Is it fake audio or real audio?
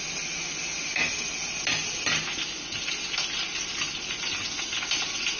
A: real